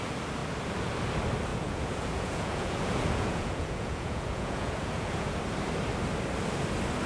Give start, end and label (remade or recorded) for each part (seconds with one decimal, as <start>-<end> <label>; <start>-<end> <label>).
0.0-1.5 recorded; 1.5-5.4 remade; 5.4-7.1 recorded